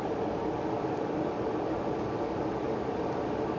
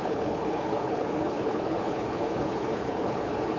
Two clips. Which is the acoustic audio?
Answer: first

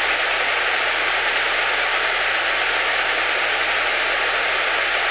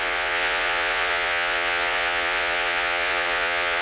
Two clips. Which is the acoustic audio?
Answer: first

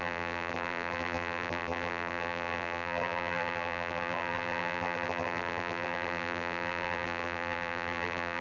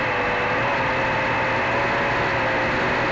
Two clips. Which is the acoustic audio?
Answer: second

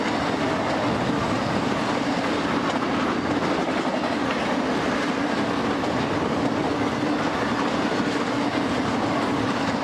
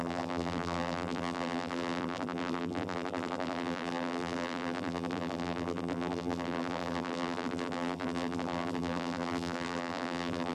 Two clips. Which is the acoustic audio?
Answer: first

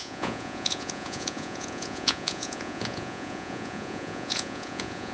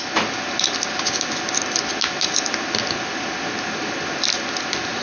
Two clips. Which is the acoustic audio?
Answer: second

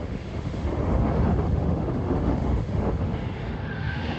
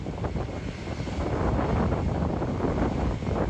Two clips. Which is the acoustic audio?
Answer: second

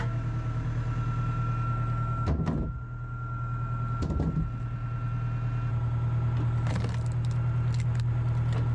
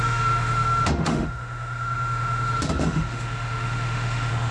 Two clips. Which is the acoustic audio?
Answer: first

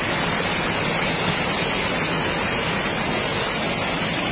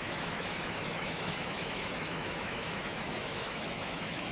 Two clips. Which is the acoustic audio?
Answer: first